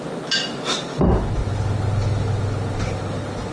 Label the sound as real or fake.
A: real